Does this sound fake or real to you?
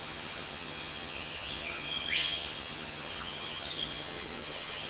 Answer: fake